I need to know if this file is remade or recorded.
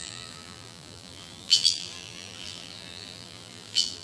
remade